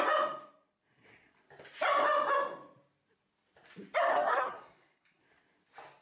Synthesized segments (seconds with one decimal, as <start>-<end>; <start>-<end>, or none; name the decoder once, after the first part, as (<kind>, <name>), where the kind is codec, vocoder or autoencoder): 4.1-5.2 (codec, SNAC)